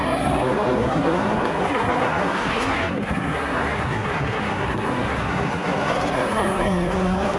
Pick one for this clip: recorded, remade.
remade